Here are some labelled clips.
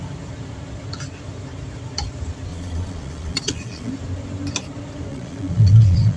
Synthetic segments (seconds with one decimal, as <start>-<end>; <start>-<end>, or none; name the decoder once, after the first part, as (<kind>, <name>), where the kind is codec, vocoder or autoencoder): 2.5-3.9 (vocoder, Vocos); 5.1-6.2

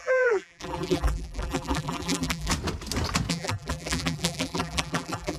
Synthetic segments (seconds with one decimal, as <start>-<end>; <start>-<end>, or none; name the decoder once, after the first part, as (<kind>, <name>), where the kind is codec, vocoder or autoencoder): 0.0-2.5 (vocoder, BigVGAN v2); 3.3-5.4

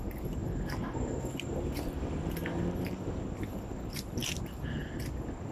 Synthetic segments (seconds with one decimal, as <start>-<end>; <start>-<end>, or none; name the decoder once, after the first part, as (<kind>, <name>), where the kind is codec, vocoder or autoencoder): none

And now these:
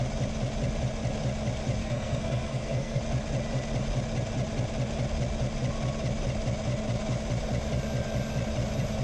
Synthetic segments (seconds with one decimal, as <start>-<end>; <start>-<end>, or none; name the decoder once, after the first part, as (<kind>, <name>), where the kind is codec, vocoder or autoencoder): 1.8-3.0 (codec, SNAC)

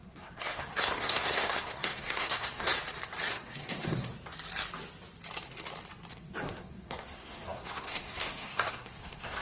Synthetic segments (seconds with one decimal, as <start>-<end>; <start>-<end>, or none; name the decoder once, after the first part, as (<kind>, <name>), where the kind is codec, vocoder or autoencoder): 0.0-2.7 (codec, SNAC); 3.3-4.1; 6.1-9.4

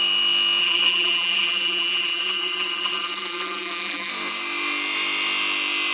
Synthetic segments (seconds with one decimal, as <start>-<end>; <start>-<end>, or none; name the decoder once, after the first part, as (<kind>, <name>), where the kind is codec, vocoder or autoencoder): 0.6-4.1 (vocoder, BigVGAN v2)

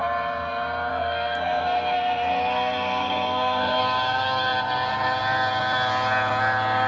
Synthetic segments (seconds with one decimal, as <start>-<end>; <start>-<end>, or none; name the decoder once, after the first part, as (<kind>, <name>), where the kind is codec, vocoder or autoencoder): 0.9-3.8 (codec, SNAC)